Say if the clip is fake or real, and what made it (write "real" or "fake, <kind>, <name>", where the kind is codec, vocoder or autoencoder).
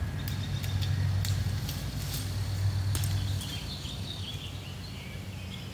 real